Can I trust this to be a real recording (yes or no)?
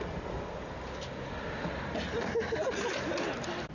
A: yes